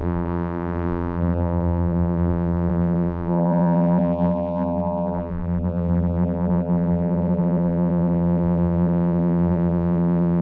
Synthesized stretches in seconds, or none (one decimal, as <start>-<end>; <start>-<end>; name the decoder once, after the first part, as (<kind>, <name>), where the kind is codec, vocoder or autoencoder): 0.0-10.4 (vocoder, BigVGAN v2)